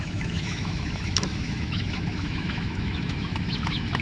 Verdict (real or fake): fake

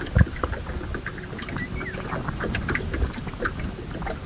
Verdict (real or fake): real